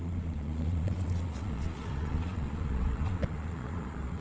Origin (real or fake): fake